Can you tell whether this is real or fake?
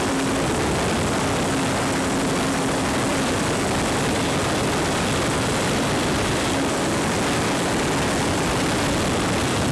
real